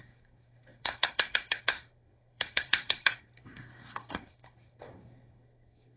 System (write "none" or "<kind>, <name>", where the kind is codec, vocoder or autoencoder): codec, SNAC